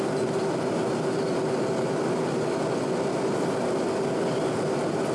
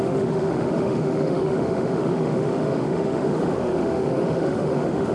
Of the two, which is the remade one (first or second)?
second